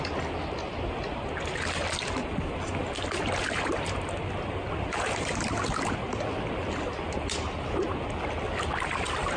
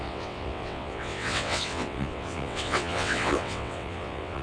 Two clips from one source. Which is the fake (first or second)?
second